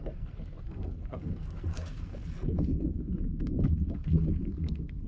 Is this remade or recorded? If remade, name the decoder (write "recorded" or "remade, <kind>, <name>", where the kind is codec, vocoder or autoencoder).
remade, codec, SNAC